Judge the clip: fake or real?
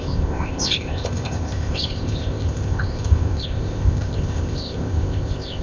fake